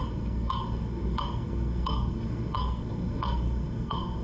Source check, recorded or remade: remade